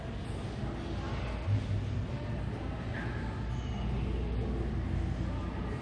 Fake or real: real